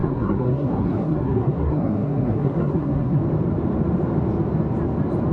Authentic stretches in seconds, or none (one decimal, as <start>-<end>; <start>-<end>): 3.2-5.3